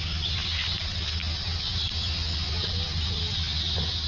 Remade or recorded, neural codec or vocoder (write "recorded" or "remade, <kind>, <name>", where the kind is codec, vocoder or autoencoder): recorded